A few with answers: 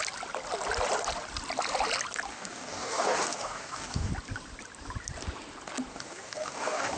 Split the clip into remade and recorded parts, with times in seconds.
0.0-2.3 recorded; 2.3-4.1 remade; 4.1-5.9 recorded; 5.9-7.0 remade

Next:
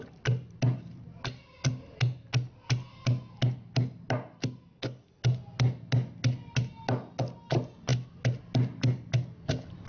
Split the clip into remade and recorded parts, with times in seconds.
0.0-9.9 recorded

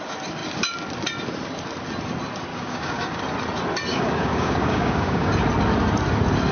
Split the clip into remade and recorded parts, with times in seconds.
0.0-2.5 recorded; 2.5-3.2 remade; 3.2-3.9 recorded; 3.9-5.3 remade; 5.3-6.5 recorded

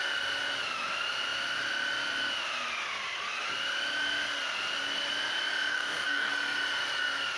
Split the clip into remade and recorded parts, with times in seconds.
0.0-5.7 recorded; 5.7-6.3 remade; 6.3-7.4 recorded

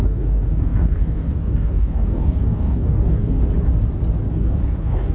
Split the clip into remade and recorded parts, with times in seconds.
0.0-3.4 remade; 3.4-4.3 recorded; 4.3-5.1 remade

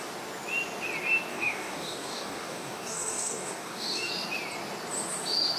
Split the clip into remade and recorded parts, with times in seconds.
0.0-1.3 recorded; 1.3-4.1 remade; 4.1-5.6 recorded